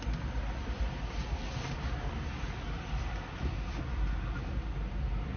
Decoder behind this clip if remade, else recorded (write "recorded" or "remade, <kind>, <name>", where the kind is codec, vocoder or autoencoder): recorded